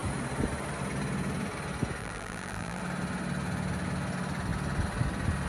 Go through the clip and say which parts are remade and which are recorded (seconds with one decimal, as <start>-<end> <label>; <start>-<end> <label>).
0.0-2.0 recorded; 2.0-2.8 remade; 2.8-5.5 recorded